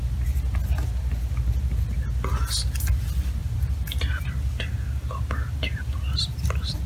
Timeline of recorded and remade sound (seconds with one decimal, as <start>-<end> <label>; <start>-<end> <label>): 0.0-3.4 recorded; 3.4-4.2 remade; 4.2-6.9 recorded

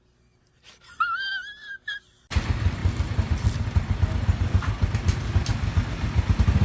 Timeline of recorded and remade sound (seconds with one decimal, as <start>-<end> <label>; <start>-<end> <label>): 0.0-6.6 recorded

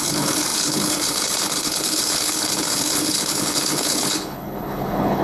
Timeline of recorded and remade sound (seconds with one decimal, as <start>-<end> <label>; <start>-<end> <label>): 0.0-5.2 remade

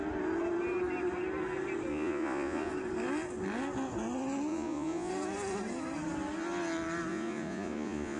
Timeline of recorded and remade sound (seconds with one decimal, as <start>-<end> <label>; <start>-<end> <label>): 0.0-1.9 recorded; 1.9-2.7 remade; 2.7-4.5 recorded; 4.5-5.1 remade; 5.1-7.1 recorded; 7.1-8.2 remade

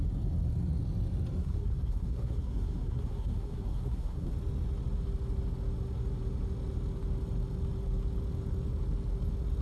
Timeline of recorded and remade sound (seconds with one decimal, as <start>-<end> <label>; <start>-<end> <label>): 0.0-1.4 recorded; 1.4-4.3 remade; 4.3-9.6 recorded

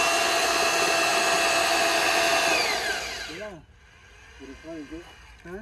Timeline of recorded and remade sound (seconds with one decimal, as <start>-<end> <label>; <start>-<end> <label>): 0.0-5.6 recorded

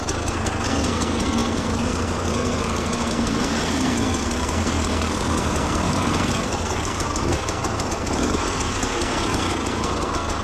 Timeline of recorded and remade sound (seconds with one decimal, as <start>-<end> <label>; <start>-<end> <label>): 0.0-10.4 remade

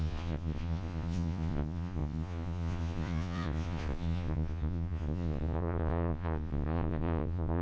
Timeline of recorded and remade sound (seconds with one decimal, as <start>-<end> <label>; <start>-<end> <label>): 0.0-7.6 remade